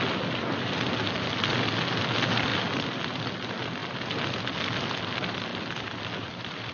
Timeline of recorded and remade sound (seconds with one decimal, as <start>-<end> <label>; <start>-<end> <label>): 0.0-2.5 recorded; 2.5-3.2 remade; 3.2-5.5 recorded; 5.5-6.7 remade